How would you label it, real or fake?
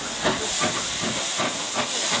real